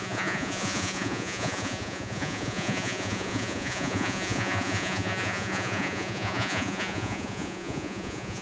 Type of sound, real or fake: fake